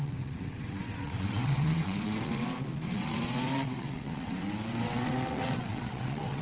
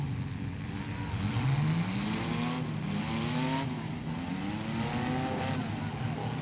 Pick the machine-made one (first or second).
first